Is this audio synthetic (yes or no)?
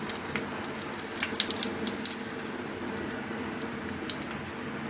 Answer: no